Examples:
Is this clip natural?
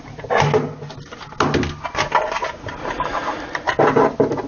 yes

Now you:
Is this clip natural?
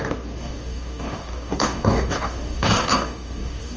no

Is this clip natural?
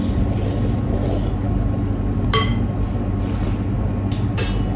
yes